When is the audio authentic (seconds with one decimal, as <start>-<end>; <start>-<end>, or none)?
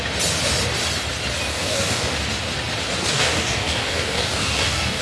0.0-1.5; 2.1-3.0